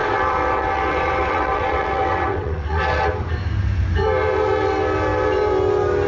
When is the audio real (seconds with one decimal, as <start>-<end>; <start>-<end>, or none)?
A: 3.1-6.1